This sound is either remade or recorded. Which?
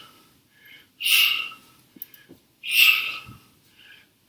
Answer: recorded